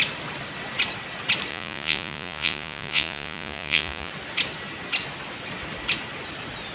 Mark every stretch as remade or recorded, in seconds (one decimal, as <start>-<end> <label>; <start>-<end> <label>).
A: 0.0-1.5 recorded; 1.5-4.1 remade; 4.1-6.7 recorded